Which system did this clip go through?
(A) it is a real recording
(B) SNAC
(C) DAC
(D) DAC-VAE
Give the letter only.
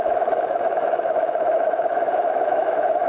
D